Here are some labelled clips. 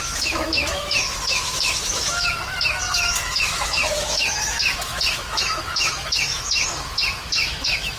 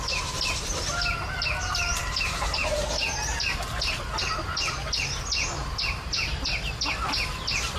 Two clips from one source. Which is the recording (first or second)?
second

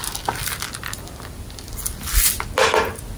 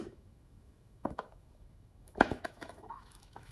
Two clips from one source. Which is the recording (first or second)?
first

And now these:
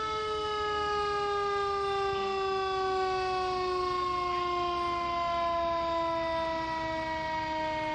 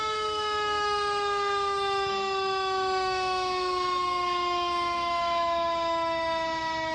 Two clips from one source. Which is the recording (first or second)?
first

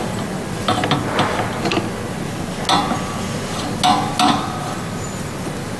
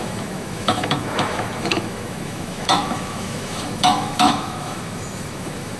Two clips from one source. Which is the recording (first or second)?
first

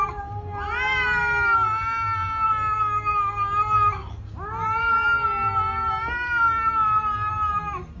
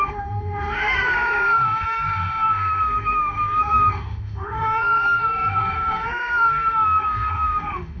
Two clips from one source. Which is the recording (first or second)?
first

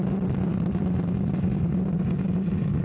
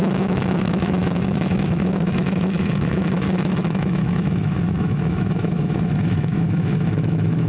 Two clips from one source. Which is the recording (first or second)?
first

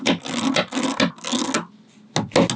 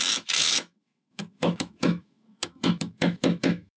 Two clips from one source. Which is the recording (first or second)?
first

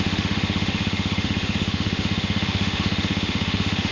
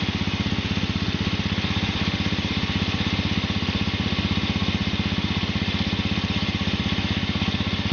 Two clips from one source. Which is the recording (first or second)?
second